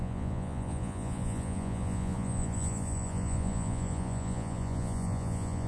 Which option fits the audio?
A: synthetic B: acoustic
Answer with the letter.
A